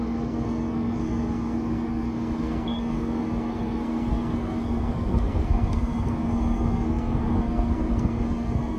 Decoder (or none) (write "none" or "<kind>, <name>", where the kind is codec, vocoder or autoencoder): codec, SNAC